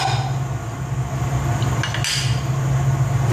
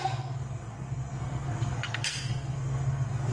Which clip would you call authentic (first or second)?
first